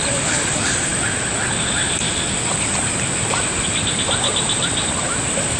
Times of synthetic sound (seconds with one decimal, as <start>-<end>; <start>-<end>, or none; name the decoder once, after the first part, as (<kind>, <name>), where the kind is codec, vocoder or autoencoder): none